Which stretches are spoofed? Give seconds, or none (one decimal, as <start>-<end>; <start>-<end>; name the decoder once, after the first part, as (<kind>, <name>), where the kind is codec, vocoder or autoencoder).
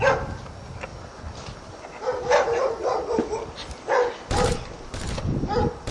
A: 0.9-1.7 (vocoder, BigVGAN v2); 2.1-4.6